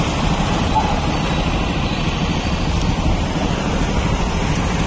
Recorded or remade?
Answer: recorded